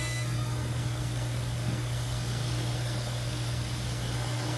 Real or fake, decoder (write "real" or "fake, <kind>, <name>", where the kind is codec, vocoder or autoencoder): fake, codec, SNAC